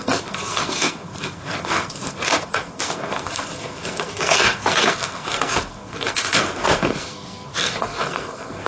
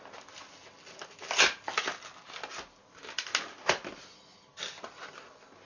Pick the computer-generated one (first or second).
first